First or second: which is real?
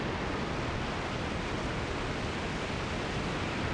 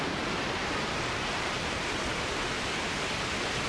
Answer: first